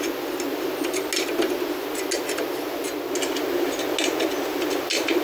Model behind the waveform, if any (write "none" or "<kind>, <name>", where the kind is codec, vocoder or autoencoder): none